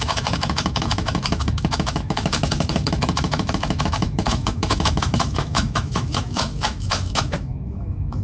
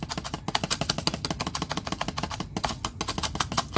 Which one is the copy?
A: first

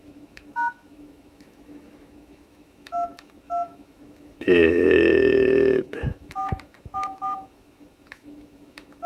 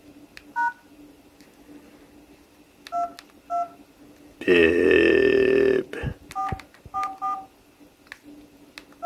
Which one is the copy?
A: first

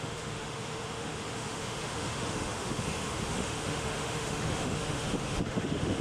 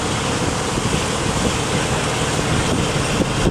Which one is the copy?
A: first